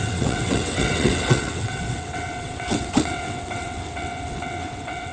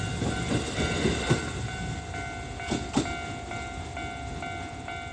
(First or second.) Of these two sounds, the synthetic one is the first